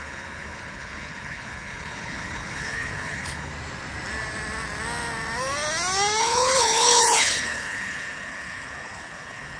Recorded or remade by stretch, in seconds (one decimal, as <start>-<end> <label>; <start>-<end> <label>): 0.0-3.5 remade; 3.5-6.2 recorded; 6.2-9.6 remade